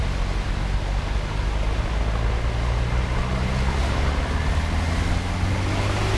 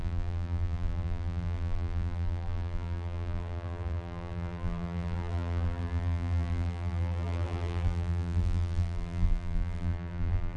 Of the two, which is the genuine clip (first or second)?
first